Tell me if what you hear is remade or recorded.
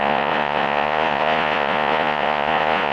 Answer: remade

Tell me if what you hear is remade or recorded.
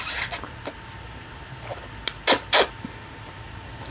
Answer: recorded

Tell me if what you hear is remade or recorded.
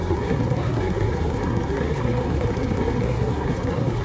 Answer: remade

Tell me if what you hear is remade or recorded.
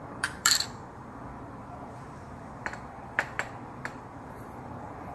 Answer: remade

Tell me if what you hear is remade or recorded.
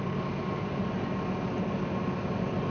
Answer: recorded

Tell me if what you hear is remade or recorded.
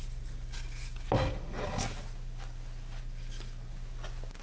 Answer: recorded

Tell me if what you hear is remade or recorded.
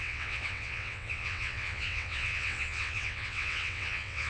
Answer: remade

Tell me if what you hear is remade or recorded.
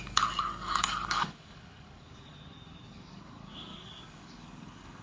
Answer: remade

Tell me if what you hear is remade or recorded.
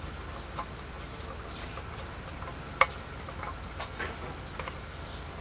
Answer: recorded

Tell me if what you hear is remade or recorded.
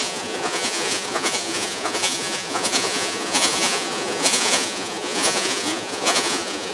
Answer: remade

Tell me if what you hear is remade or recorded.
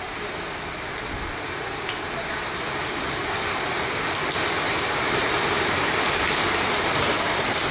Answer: recorded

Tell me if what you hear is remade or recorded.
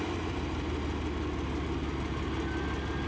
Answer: recorded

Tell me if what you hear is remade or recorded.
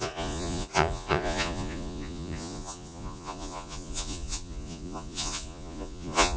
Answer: remade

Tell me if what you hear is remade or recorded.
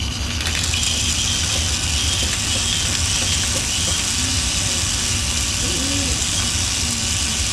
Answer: recorded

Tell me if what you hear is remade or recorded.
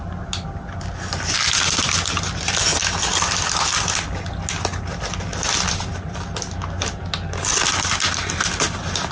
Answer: recorded